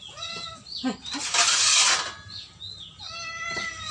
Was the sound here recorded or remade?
recorded